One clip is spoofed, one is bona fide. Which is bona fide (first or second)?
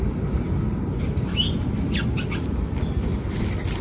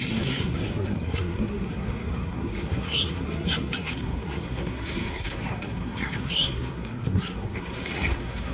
first